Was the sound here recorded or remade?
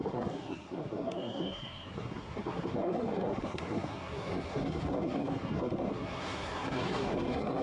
remade